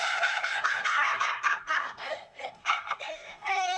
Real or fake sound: fake